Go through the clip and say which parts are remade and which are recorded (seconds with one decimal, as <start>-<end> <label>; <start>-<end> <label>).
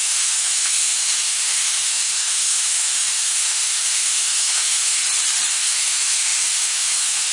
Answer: 0.0-5.0 remade; 5.0-5.5 recorded; 5.5-7.3 remade